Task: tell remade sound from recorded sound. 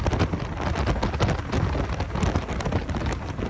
recorded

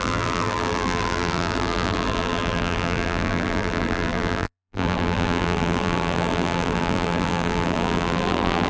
remade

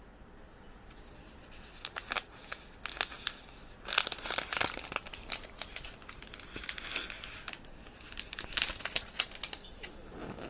recorded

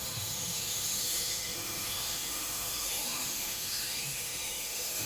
remade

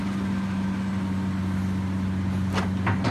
recorded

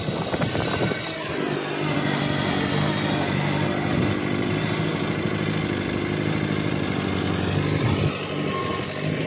recorded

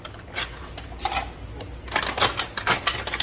recorded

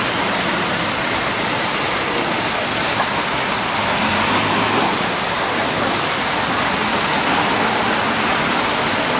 recorded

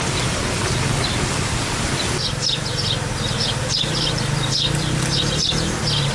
recorded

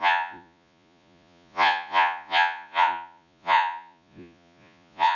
remade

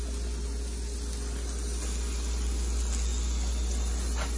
recorded